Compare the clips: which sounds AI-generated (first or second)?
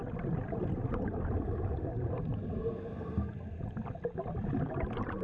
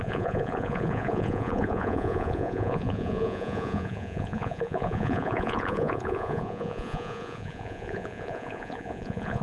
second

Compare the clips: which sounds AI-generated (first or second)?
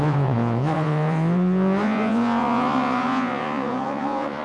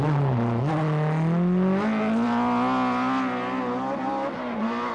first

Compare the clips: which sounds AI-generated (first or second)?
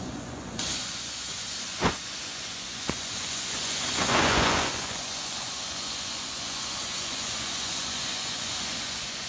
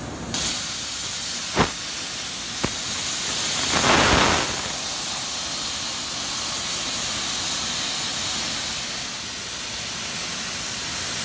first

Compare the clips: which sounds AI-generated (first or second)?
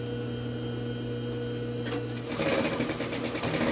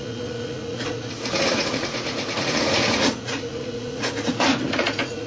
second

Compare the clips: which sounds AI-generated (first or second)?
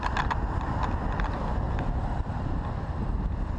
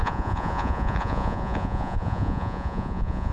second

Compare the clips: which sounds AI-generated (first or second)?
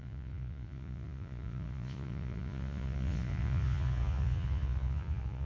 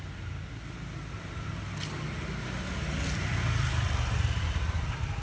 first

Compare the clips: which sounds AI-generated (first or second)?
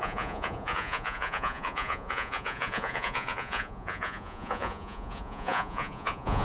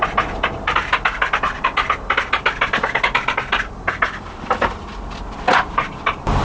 first